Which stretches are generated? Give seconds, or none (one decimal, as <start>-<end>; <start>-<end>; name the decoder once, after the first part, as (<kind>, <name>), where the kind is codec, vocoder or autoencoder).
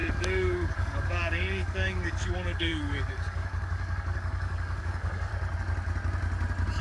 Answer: 0.0-5.3 (codec, DAC)